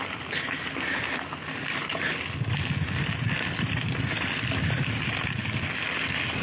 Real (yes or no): yes